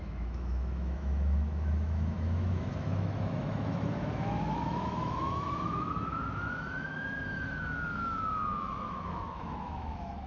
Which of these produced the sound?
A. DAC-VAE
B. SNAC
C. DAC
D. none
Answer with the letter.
A